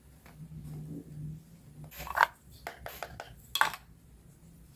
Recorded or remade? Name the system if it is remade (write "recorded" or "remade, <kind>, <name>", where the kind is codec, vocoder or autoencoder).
recorded